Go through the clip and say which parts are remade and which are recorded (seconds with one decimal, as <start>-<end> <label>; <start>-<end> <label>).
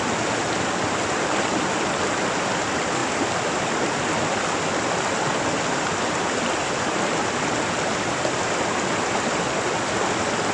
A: 0.0-10.5 recorded